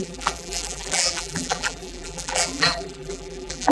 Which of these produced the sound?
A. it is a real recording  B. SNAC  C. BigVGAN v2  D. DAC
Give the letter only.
C